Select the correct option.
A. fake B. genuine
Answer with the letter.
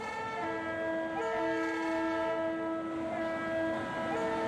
B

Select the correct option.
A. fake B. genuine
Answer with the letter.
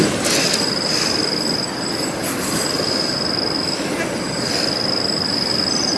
B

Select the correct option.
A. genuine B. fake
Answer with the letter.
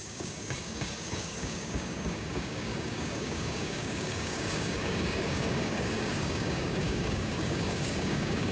B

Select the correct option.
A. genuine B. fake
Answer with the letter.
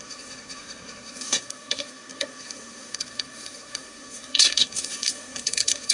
B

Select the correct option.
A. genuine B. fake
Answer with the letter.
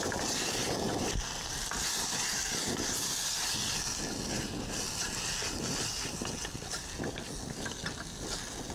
A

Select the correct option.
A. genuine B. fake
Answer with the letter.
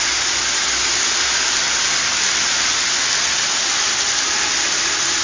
A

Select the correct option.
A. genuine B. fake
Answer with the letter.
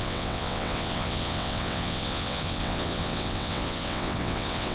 B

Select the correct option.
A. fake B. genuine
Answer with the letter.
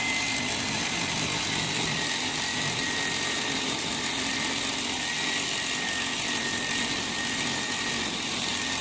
B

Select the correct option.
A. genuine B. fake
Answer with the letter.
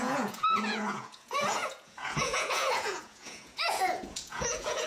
B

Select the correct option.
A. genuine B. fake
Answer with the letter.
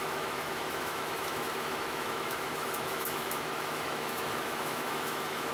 B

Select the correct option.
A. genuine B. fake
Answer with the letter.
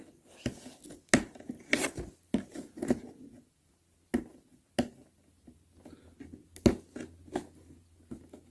A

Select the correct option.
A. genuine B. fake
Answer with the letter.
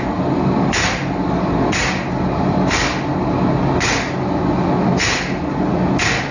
A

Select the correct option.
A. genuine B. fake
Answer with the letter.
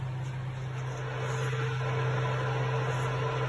A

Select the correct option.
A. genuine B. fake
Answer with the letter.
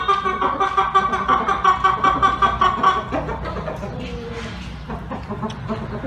A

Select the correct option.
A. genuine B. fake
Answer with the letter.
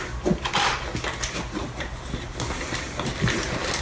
A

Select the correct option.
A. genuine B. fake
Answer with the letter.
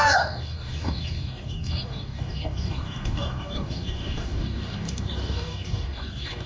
B